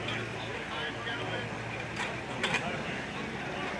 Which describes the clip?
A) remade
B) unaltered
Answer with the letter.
B